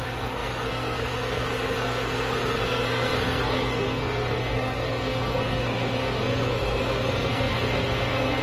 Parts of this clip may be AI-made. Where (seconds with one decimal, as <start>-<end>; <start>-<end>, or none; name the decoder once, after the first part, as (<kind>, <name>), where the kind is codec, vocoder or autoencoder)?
0.0-8.4 (codec, SNAC)